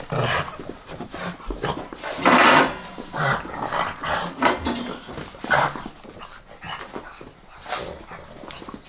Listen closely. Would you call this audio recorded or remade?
recorded